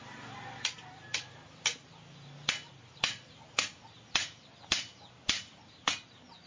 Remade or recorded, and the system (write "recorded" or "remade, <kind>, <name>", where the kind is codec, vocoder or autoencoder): recorded